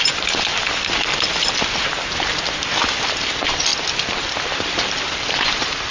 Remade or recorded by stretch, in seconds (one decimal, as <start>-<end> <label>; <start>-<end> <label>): 0.0-0.5 remade; 0.5-3.1 recorded; 3.1-3.7 remade; 3.7-4.4 recorded; 4.4-5.9 remade